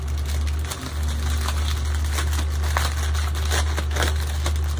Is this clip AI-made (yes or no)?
no